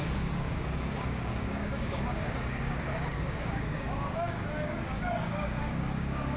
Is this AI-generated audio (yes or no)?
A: yes